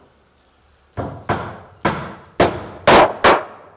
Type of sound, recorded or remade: recorded